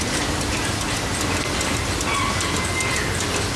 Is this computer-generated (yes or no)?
no